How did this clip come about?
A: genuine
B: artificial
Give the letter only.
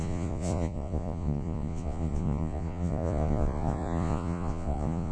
B